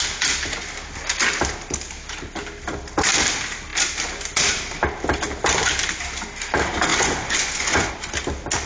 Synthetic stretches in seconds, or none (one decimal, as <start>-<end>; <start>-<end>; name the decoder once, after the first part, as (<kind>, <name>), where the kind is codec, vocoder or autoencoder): 6.9-7.9 (vocoder, Vocos)